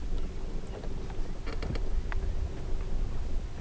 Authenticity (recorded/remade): recorded